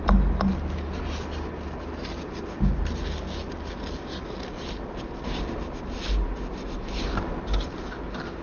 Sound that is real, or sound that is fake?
real